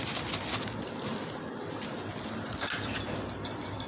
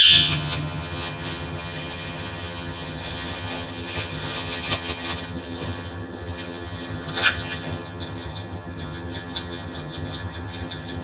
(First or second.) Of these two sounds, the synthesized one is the second